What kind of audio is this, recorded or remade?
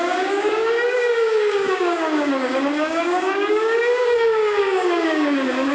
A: remade